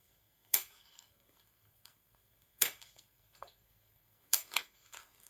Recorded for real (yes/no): no